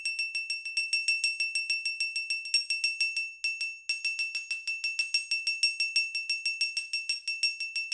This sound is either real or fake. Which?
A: real